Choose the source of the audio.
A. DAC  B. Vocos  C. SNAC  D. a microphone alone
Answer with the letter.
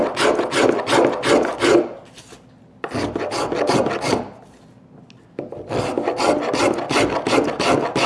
D